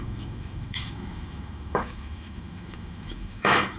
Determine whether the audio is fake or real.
fake